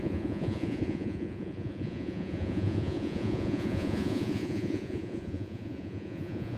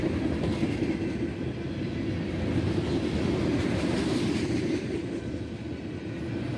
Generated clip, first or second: first